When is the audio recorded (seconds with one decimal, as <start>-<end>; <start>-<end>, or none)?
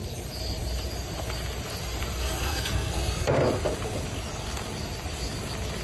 0.0-2.2; 3.3-5.8